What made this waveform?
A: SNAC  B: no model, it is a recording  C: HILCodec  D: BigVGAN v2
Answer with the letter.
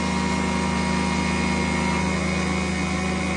B